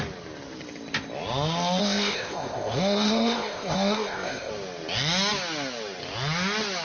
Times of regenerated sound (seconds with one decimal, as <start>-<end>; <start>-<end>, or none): 1.8-4.5